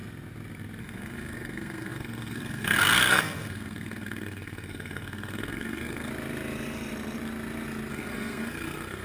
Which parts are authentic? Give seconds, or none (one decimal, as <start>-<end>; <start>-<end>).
0.0-0.8; 6.1-7.9